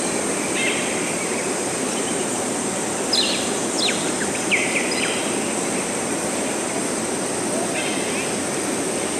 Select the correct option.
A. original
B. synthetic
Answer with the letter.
A